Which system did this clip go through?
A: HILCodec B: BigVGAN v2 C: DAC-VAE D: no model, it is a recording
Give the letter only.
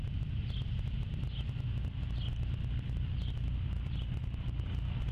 D